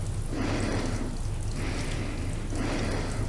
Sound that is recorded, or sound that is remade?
recorded